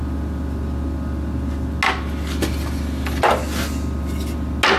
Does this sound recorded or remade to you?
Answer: recorded